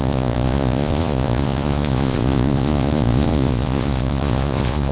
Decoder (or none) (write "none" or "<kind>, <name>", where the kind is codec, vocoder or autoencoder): vocoder, Vocos